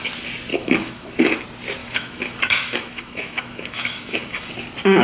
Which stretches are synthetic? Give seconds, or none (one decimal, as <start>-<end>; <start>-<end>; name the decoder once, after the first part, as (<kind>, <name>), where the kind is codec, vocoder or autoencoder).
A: 0.5-1.4 (autoencoder, DAC-VAE); 1.8-4.5